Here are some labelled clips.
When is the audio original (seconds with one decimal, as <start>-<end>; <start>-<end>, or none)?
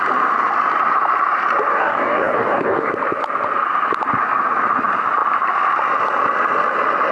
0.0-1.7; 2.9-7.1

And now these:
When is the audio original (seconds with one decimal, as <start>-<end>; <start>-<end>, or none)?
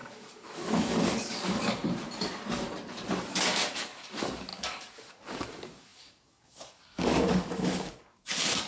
1.8-3.3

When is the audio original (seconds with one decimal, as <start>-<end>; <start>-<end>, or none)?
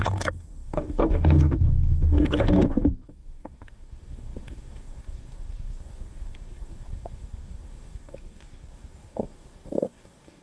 none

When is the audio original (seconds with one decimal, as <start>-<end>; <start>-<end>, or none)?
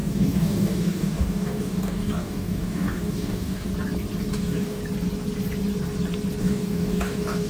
3.7-4.3; 4.8-6.4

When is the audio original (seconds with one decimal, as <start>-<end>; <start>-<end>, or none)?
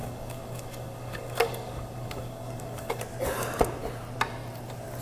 3.0-5.0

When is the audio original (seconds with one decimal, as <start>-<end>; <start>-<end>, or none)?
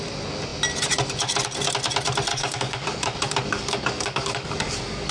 0.0-2.3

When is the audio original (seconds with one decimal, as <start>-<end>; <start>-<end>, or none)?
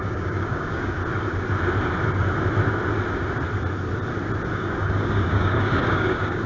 1.0-4.5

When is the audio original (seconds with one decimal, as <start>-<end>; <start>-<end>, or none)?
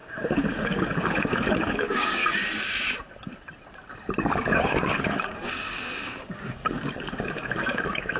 2.2-4.2